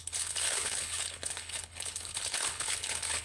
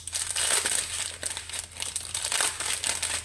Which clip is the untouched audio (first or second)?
second